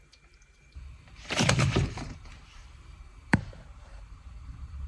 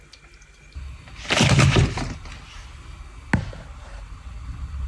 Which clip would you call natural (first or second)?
second